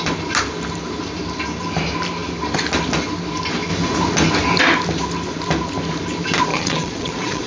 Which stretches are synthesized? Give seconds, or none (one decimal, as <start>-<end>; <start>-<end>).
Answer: 6.5-7.5

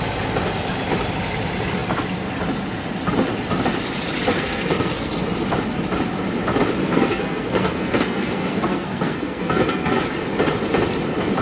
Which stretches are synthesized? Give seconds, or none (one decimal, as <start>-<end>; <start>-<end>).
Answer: 4.3-5.1; 6.8-10.0

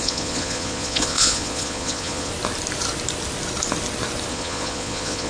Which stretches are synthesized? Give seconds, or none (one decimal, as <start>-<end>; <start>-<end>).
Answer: 0.0-2.3; 4.3-5.3

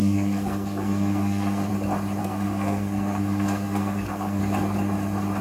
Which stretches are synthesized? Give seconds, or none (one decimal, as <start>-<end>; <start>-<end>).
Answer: 0.0-1.7; 2.2-4.4

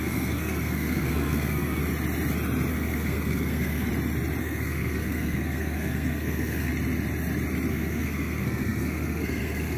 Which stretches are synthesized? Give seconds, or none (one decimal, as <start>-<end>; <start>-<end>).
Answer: 0.0-1.8; 2.7-3.9; 4.4-6.7; 7.7-9.8

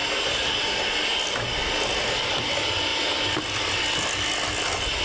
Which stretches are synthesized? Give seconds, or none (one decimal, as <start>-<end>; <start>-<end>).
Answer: 2.9-3.4